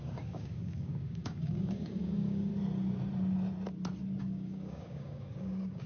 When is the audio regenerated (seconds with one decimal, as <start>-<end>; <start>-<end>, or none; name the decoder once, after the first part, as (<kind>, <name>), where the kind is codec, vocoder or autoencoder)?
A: 0.0-2.5 (codec, DAC); 4.2-5.9